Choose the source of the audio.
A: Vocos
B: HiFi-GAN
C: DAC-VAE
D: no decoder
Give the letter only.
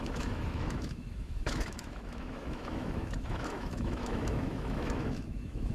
C